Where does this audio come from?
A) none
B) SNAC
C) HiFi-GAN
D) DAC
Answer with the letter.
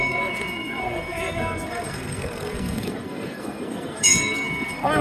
B